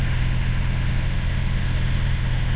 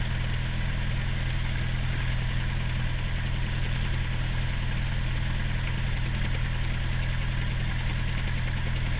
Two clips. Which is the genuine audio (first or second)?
second